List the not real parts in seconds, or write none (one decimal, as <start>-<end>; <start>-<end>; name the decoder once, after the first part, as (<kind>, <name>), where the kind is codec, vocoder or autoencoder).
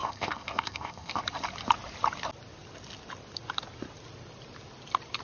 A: 0.0-1.2 (codec, ZipCodec)